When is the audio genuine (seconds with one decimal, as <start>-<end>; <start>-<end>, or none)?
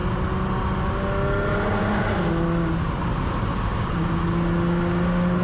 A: 0.0-3.1; 4.1-5.4